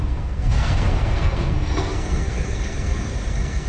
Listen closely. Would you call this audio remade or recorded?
remade